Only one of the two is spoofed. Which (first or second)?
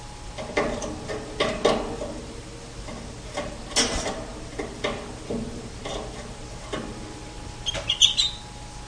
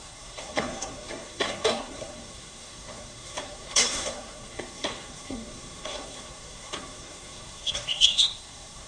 second